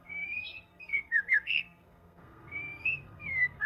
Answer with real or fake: fake